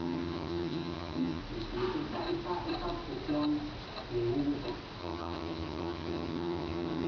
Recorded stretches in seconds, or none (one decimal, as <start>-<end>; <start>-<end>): 1.4-5.0